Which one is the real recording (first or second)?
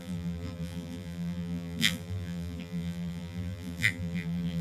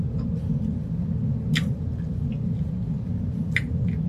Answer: second